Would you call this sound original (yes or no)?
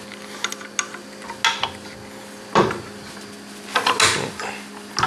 yes